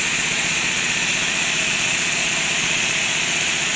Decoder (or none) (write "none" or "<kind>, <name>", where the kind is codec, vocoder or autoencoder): vocoder, Vocos